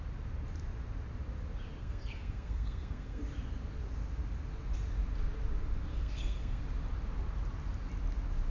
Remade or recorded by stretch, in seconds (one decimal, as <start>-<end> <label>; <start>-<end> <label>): 0.0-1.8 recorded; 1.8-3.2 remade; 3.2-5.9 recorded; 5.9-6.6 remade; 6.6-8.5 recorded